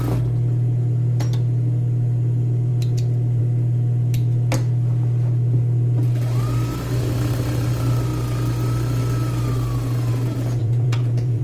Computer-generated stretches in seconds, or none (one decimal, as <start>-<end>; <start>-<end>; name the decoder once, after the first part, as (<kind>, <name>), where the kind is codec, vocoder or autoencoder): 10.6-11.4 (vocoder, Vocos)